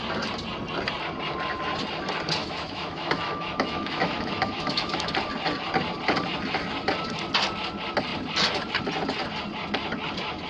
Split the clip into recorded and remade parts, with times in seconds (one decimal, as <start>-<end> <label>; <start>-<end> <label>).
0.0-2.4 recorded; 2.4-5.1 remade; 5.1-10.5 recorded